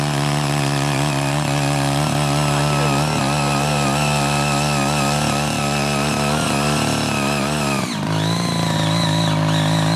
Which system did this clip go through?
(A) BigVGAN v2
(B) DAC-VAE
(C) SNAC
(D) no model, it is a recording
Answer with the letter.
D